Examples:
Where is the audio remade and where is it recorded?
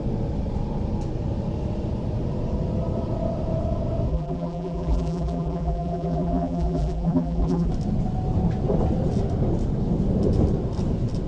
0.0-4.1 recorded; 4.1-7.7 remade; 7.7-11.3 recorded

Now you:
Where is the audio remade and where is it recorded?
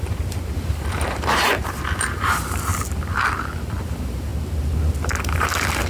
0.0-2.7 remade; 2.7-3.8 recorded; 3.8-4.3 remade; 4.3-5.0 recorded; 5.0-5.9 remade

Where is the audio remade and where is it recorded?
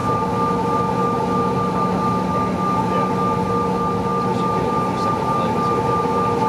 0.0-6.5 recorded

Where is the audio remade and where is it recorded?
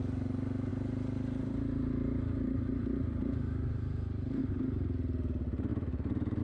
0.0-0.7 recorded; 0.7-4.4 remade; 4.4-5.7 recorded; 5.7-6.4 remade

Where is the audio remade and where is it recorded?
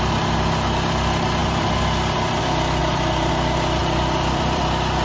0.0-1.4 recorded; 1.4-2.4 remade; 2.4-2.8 recorded; 2.8-3.3 remade; 3.3-3.8 recorded; 3.8-4.6 remade; 4.6-5.0 recorded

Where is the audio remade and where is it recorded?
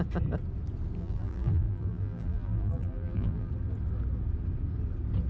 0.0-1.0 recorded; 1.0-3.5 remade; 3.5-5.3 recorded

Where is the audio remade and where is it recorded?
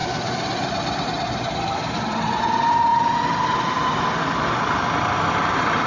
0.0-1.0 recorded; 1.0-2.9 remade; 2.9-5.2 recorded; 5.2-5.9 remade